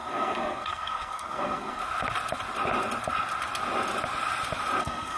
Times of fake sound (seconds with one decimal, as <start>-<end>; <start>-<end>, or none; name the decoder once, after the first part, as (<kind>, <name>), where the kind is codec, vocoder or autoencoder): 0.0-1.8 (codec, SNAC); 4.8-5.2